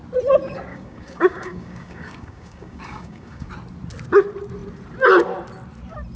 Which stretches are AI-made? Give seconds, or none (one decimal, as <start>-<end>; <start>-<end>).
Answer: 0.7-3.5